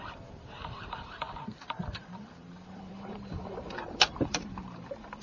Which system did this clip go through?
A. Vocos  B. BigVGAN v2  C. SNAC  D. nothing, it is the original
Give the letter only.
B